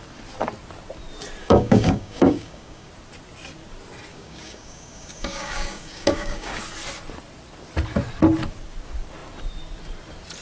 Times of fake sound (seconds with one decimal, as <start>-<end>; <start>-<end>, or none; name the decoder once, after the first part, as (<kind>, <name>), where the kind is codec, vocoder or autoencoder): 1.4-2.9 (codec, DAC); 4.1-6.6